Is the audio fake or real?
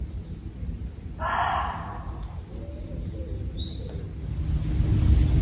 real